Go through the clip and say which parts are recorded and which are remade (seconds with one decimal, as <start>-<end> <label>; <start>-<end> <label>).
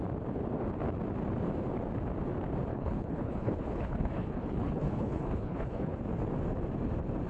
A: 0.0-2.7 recorded; 2.7-6.0 remade; 6.0-7.3 recorded